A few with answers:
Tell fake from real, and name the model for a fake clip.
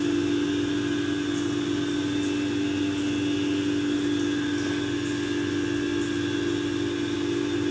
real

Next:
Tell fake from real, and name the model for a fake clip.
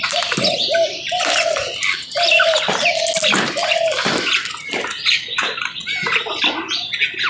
real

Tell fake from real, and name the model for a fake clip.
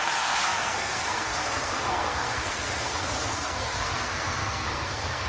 fake, codec, SNAC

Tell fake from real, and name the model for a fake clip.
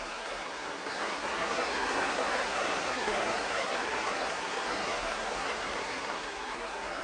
fake, codec, SNAC